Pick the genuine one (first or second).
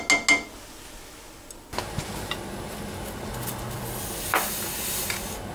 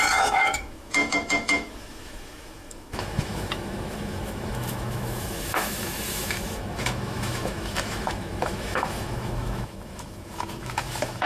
first